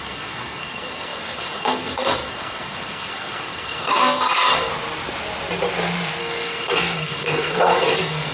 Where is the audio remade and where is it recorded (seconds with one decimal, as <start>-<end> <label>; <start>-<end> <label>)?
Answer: 0.0-4.7 remade; 4.7-6.2 recorded; 6.2-8.3 remade